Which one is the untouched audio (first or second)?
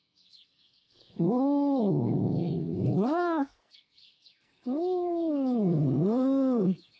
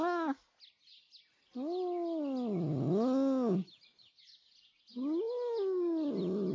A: second